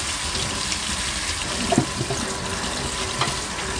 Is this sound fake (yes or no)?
no